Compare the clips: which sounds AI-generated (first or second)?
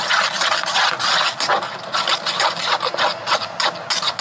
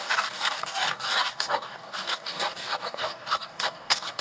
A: second